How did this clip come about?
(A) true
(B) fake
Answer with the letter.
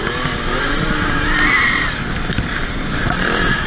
A